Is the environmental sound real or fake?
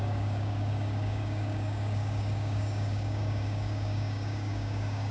fake